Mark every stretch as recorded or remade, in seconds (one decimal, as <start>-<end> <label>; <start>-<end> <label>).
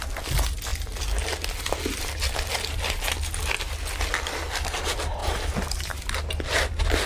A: 0.0-7.1 recorded